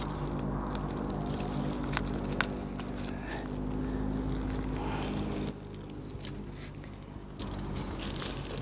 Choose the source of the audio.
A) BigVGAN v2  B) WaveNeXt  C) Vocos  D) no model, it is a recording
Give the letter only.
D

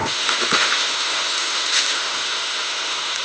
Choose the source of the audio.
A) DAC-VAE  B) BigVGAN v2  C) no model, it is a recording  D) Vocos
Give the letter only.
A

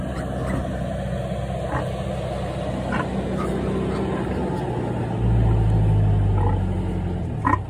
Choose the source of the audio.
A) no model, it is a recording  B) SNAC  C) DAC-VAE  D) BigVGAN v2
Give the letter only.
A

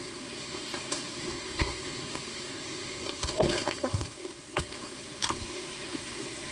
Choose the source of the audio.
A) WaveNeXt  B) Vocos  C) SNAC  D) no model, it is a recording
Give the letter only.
C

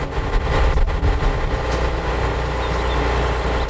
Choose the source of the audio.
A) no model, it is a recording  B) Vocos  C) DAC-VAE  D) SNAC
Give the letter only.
A